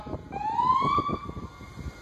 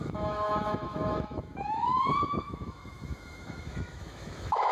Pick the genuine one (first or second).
first